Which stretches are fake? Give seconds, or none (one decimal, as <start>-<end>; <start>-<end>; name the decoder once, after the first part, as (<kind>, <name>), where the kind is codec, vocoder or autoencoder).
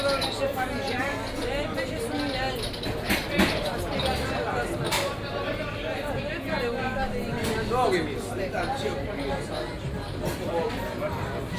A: none